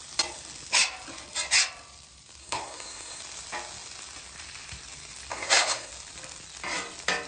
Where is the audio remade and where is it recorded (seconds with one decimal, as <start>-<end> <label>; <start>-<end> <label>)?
0.0-2.4 recorded; 2.4-3.2 remade; 3.2-5.3 recorded; 5.3-5.9 remade; 5.9-7.3 recorded